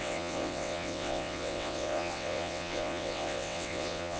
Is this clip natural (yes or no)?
no